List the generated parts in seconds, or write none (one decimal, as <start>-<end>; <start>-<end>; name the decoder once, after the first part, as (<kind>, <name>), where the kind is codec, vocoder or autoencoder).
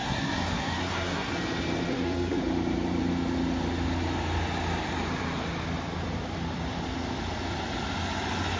0.0-1.3 (codec, SNAC); 1.9-2.4